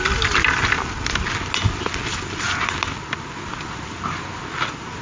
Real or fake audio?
real